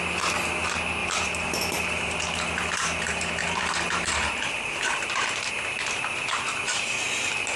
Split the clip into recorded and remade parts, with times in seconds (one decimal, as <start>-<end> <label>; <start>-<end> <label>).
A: 0.0-1.0 recorded; 1.0-5.5 remade; 5.5-7.6 recorded